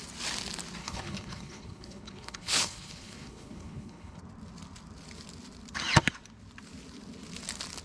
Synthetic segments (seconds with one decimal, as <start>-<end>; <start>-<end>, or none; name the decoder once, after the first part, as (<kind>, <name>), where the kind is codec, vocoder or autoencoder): 0.8-4.2 (codec, HILCodec)